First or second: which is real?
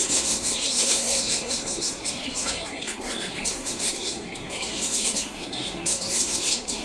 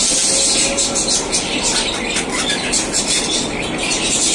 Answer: second